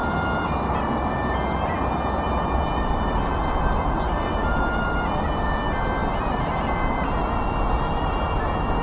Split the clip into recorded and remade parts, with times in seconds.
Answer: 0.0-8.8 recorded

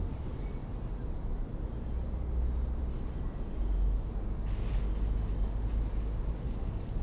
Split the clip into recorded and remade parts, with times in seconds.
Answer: 0.0-7.0 recorded

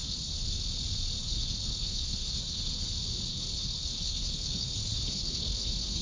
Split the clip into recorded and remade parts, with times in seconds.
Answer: 0.0-0.6 remade; 0.6-1.2 recorded; 1.2-2.9 remade; 2.9-3.3 recorded; 3.3-6.0 remade

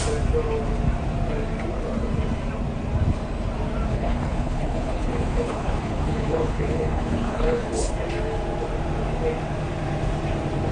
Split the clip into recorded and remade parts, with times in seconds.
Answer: 0.0-3.9 recorded; 3.9-7.9 remade; 7.9-10.7 recorded

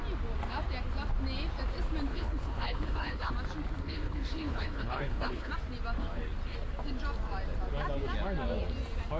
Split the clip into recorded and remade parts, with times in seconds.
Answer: 0.0-2.1 recorded; 2.1-3.3 remade; 3.3-3.8 recorded; 3.8-5.5 remade; 5.5-9.2 recorded